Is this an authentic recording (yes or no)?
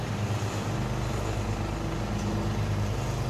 yes